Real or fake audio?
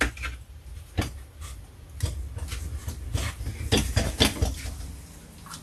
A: real